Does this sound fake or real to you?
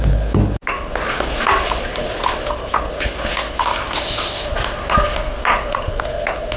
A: real